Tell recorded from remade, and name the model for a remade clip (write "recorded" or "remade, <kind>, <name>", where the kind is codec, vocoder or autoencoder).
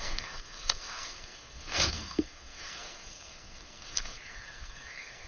remade, codec, SNAC